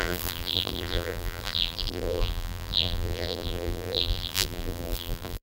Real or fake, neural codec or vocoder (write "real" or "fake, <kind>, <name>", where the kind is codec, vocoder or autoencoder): fake, vocoder, BigVGAN v2